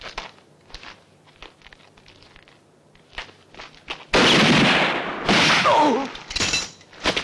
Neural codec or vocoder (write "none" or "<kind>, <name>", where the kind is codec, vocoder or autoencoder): none